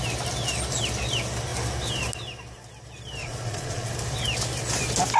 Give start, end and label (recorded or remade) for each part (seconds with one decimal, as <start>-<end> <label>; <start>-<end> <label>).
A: 0.0-3.2 recorded; 3.2-3.9 remade; 3.9-5.2 recorded